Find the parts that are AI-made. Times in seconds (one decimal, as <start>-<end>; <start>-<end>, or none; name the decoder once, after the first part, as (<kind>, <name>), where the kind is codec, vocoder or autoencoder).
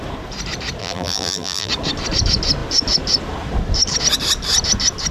0.8-1.7 (vocoder, BigVGAN v2)